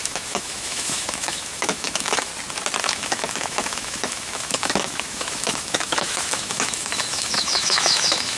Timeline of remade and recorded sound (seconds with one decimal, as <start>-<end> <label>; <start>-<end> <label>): 0.0-2.3 remade; 2.3-2.8 recorded; 2.8-8.4 remade